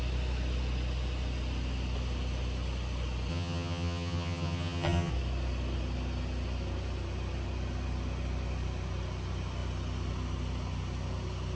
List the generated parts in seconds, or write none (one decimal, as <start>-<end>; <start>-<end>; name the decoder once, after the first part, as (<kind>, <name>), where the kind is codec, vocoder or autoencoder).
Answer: 3.3-5.1 (vocoder, HiFi-GAN)